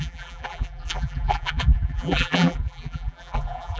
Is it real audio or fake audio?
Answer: fake